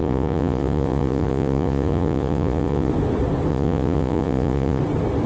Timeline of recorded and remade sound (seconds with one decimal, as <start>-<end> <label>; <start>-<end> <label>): 0.0-2.9 remade; 2.9-3.5 recorded; 3.5-4.8 remade; 4.8-5.3 recorded